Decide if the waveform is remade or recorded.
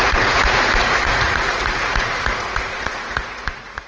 remade